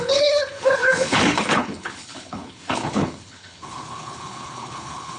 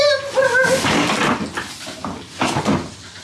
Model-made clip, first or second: first